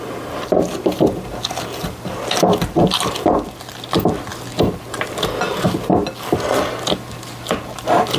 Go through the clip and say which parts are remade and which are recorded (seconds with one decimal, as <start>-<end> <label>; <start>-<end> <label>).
0.0-8.2 recorded